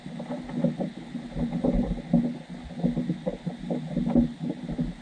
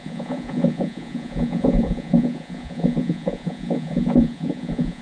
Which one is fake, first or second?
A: second